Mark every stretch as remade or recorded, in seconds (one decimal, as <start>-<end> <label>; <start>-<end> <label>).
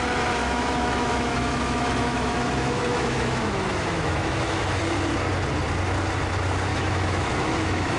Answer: 0.0-0.4 recorded; 0.4-4.8 remade; 4.8-6.7 recorded; 6.7-8.0 remade